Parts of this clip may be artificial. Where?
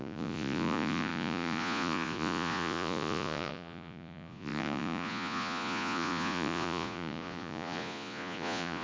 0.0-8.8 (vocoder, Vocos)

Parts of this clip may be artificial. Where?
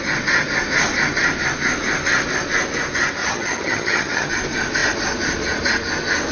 3.2-4.3 (vocoder, HiFi-GAN)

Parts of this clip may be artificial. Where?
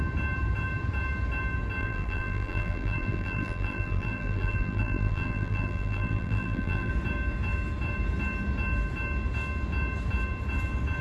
1.8-6.9 (vocoder, BigVGAN v2)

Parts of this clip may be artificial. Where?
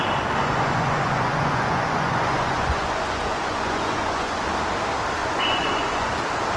0.4-4.4 (vocoder, Vocos); 5.2-6.1